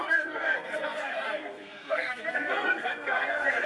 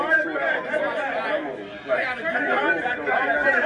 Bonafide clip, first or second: second